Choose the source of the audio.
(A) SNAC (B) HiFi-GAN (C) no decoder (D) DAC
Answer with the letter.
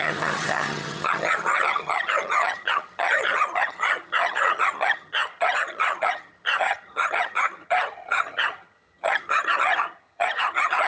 B